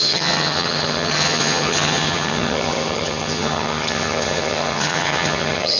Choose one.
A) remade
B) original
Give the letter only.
A